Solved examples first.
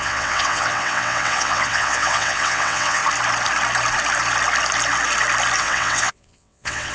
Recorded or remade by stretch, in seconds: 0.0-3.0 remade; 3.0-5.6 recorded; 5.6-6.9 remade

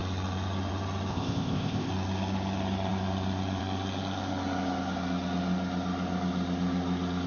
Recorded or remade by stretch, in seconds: 0.0-1.1 recorded; 1.1-1.9 remade; 1.9-7.3 recorded

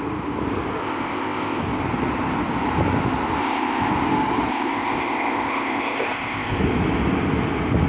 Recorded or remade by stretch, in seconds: 0.0-0.8 recorded; 0.8-1.6 remade; 1.6-3.4 recorded; 3.4-3.9 remade; 3.9-4.5 recorded; 4.5-6.6 remade; 6.6-7.9 recorded

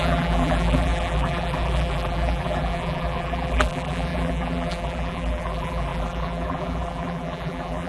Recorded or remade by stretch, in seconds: 0.0-7.9 remade

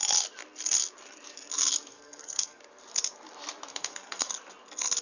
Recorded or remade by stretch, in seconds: 0.0-1.9 recorded; 1.9-2.6 remade; 2.6-3.7 recorded; 3.7-4.3 remade; 4.3-5.0 recorded

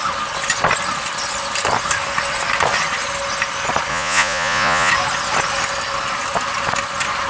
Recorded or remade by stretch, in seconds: 0.0-3.9 recorded; 3.9-4.9 remade; 4.9-7.3 recorded

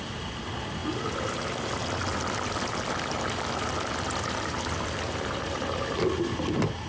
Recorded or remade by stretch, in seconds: 0.0-6.9 recorded